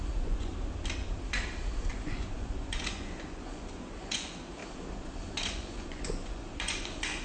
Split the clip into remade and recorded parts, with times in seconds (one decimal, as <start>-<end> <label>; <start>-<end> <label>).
0.0-0.5 remade; 0.5-1.9 recorded; 1.9-4.6 remade; 4.6-5.2 recorded; 5.2-7.2 remade